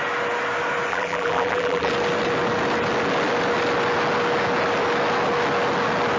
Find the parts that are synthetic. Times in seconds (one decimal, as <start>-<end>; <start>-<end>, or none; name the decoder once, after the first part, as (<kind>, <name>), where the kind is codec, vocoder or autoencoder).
0.9-1.9 (vocoder, BigVGAN v2)